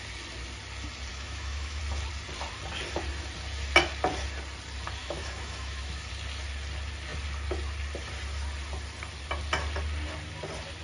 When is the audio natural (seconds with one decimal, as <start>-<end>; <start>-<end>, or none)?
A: 0.0-1.1; 1.8-5.0; 6.1-10.8